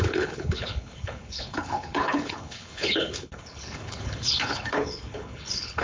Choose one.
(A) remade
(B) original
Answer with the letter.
A